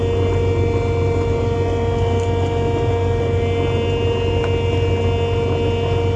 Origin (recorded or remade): recorded